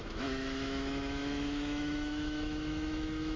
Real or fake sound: fake